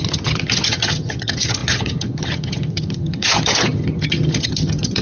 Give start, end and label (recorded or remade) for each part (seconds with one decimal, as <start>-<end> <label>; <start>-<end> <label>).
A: 0.0-5.0 remade